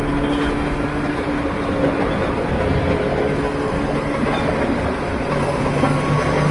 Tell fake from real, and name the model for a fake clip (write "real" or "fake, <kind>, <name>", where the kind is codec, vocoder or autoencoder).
real